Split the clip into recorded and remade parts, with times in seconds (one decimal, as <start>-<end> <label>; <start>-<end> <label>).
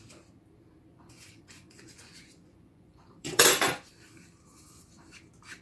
0.0-0.9 recorded; 0.9-3.9 remade; 3.9-5.6 recorded